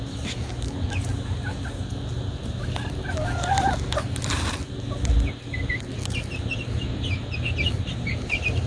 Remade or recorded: recorded